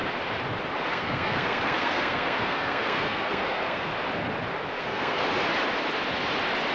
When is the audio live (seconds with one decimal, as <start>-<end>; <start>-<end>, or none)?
0.0-0.9; 3.9-4.8; 5.2-6.7